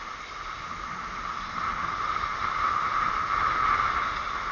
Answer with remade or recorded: recorded